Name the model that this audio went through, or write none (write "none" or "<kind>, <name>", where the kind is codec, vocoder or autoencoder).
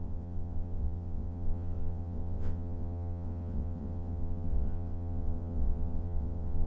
vocoder, WaveNeXt